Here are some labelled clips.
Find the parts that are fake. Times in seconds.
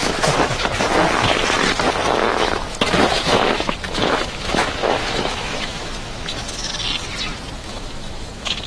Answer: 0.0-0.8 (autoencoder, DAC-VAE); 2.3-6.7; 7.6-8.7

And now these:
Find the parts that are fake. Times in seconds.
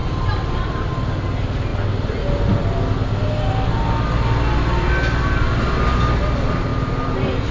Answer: none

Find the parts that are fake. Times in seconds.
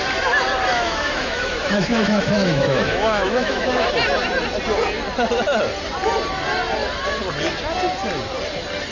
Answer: 0.7-3.9 (autoencoder, DAC-VAE)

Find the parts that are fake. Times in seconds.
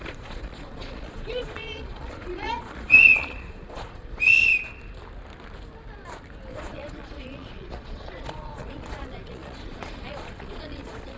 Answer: 0.0-4.5 (vocoder, Vocos); 6.5-11.2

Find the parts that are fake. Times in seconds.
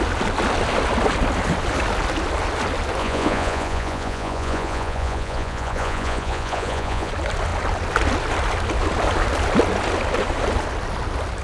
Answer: 3.0-7.1 (vocoder, Vocos)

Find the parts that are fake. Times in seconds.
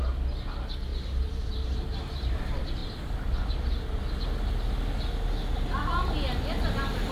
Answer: 0.9-2.4 (vocoder, BigVGAN v2); 2.8-4.0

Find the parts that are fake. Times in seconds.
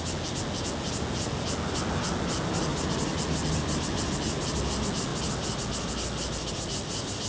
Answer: none